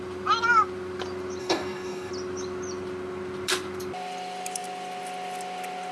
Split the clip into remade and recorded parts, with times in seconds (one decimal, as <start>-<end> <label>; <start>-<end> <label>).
0.0-1.4 recorded; 1.4-2.1 remade; 2.1-5.9 recorded